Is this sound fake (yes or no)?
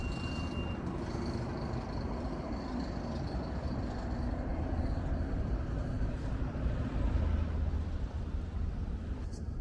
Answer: no